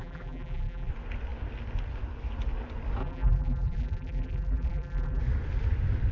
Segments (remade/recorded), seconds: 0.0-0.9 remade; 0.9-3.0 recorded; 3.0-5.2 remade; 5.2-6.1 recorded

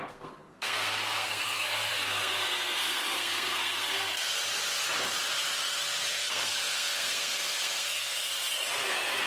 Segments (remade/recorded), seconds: 0.0-4.3 remade; 4.3-6.1 recorded; 6.1-8.3 remade; 8.3-8.9 recorded; 8.9-9.3 remade

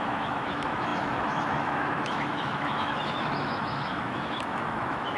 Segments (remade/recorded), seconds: 0.0-5.2 remade

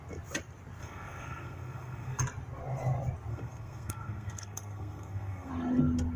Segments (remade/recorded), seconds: 0.0-0.8 recorded; 0.8-2.2 remade; 2.2-3.3 recorded; 3.3-5.5 remade; 5.5-6.2 recorded

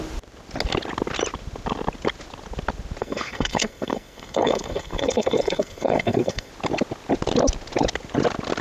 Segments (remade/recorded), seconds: 0.0-3.0 recorded; 3.0-6.5 remade; 6.5-8.6 recorded

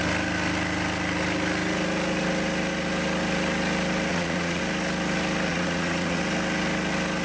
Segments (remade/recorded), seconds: 0.0-4.1 recorded; 4.1-4.6 remade; 4.6-5.5 recorded; 5.5-6.2 remade; 6.2-7.2 recorded

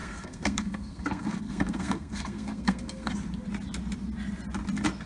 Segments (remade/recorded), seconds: 0.0-3.1 remade; 3.1-5.1 recorded